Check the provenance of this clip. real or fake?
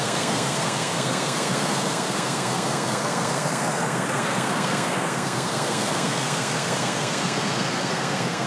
fake